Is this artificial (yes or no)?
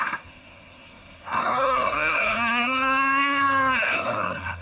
yes